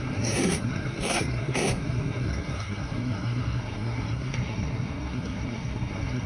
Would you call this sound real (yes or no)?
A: no